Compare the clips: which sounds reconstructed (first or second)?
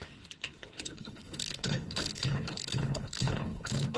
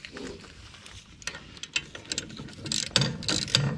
first